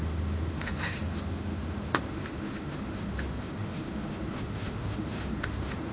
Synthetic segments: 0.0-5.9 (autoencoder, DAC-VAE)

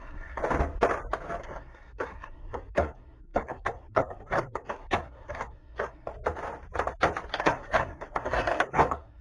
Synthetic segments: 0.0-0.4 (codec, SNAC); 1.4-6.1; 7.4-9.2

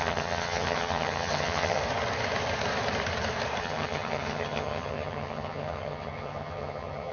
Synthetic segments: 0.0-1.8 (vocoder, HiFi-GAN); 3.6-7.1

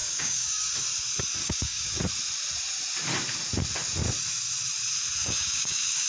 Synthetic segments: 0.0-0.7 (codec, DAC); 1.4-2.0; 5.2-6.1

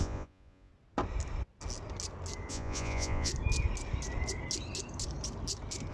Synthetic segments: 0.0-0.7 (vocoder, Vocos); 2.5-3.3

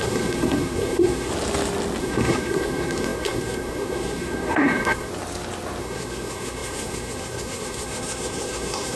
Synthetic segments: 0.0-1.3 (codec, SNAC); 2.0-5.1; 5.8-9.0

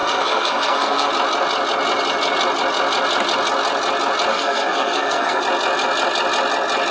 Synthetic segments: 0.0-1.1 (codec, SNAC); 4.3-5.4

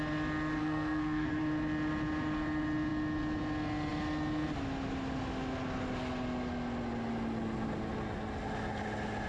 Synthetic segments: 0.6-1.4 (codec, SNAC)